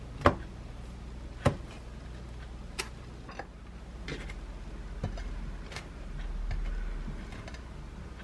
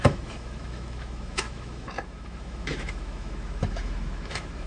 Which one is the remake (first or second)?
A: second